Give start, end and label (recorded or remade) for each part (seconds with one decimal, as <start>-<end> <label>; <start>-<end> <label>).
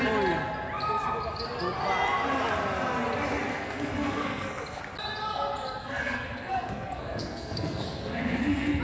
0.0-3.5 recorded; 3.5-4.8 remade; 4.8-5.8 recorded; 5.8-8.8 remade